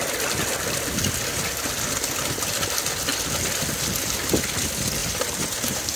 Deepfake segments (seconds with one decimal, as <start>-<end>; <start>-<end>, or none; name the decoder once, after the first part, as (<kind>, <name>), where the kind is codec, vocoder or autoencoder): 5.0-6.0 (vocoder, BigVGAN v2)